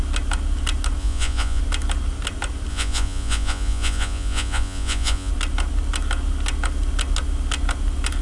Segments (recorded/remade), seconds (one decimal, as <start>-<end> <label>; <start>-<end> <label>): 0.0-1.0 recorded; 1.0-1.6 remade; 1.6-2.7 recorded; 2.7-5.3 remade; 5.3-8.2 recorded